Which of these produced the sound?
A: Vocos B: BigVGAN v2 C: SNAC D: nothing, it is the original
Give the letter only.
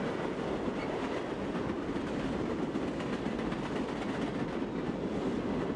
D